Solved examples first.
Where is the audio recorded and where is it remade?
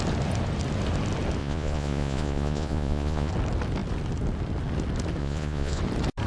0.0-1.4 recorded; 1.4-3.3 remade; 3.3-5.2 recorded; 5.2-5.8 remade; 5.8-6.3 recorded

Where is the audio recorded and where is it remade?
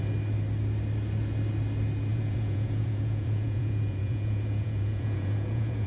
0.0-2.1 recorded; 2.1-5.9 remade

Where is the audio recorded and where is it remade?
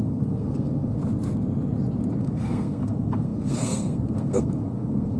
0.0-1.0 remade; 1.0-2.2 recorded; 2.2-5.2 remade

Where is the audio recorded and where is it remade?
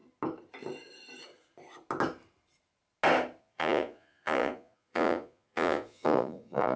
0.0-3.4 recorded; 3.4-6.8 remade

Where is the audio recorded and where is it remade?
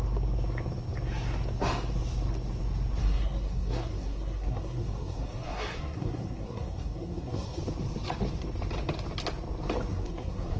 0.0-3.0 recorded; 3.0-7.6 remade; 7.6-9.9 recorded; 9.9-10.6 remade